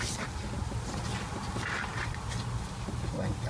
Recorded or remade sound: recorded